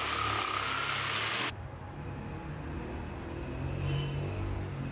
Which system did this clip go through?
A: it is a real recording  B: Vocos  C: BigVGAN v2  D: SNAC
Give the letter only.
A